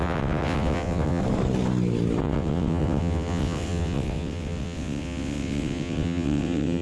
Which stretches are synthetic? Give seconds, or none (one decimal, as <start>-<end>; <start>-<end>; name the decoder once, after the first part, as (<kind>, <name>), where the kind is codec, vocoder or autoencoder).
0.0-1.2 (vocoder, WaveNeXt); 2.2-6.8